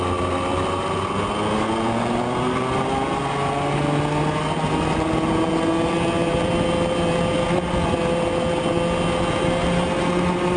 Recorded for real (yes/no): yes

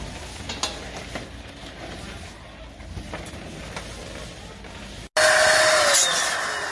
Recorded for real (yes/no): yes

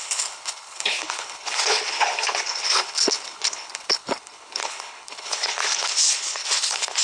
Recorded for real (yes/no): no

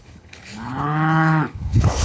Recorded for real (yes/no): no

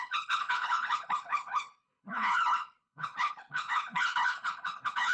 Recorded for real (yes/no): no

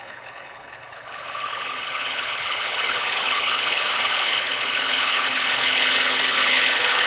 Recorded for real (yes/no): no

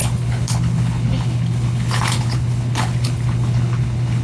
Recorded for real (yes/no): no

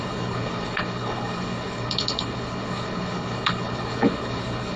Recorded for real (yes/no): no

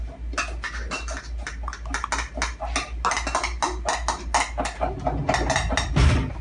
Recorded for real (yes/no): yes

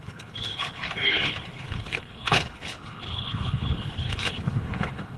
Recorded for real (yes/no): no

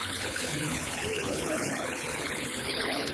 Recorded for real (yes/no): no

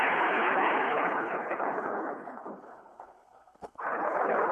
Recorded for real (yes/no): no